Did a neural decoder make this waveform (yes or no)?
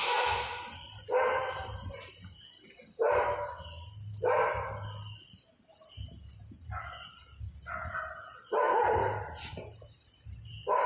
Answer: no